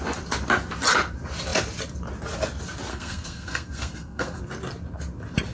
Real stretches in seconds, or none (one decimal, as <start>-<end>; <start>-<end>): 0.0-2.9; 4.4-5.5